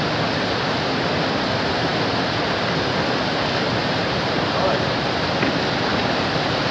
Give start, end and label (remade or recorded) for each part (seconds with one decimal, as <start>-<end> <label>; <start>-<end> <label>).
0.0-3.8 recorded; 3.8-4.4 remade; 4.4-5.9 recorded; 5.9-6.7 remade